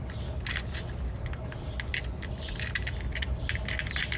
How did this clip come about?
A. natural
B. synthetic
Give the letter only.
A